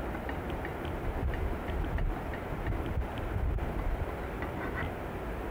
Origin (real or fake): fake